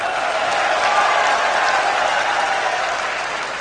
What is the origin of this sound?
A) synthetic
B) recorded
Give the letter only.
B